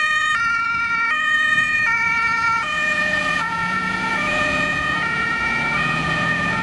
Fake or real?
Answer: fake